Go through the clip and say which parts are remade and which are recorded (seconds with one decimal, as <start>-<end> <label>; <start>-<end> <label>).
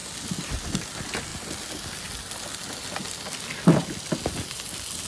0.0-5.1 recorded